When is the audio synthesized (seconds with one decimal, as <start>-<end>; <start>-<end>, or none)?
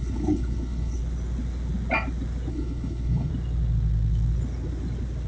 0.0-1.0; 2.5-3.3